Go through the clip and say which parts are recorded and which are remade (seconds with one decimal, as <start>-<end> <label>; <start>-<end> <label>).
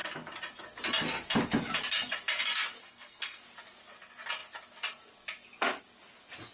0.0-2.8 recorded; 2.8-3.4 remade; 3.4-6.5 recorded